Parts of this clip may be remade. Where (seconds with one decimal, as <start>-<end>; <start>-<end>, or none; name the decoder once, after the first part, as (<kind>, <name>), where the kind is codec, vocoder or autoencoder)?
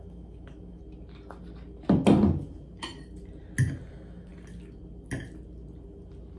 0.0-0.8 (autoencoder, DAC-VAE); 3.9-4.3